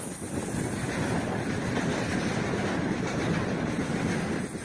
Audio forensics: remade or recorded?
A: recorded